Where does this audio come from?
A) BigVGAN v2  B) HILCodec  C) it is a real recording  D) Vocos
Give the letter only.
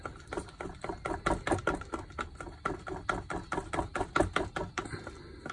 C